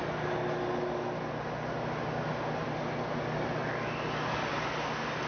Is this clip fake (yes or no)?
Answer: no